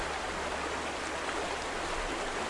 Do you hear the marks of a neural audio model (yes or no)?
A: no